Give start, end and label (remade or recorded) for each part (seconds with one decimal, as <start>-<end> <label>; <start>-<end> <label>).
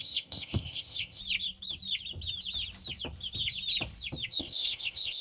0.0-1.2 remade; 1.2-4.3 recorded; 4.3-5.2 remade